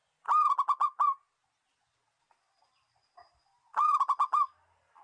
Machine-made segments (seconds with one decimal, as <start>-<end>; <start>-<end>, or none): none

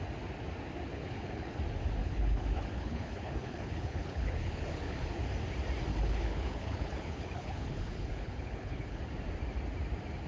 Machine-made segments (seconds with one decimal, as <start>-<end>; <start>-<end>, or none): 0.9-1.6; 2.0-5.1; 5.9-9.0